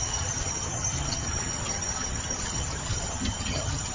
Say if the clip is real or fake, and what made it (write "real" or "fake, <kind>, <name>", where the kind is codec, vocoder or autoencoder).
fake, vocoder, HiFi-GAN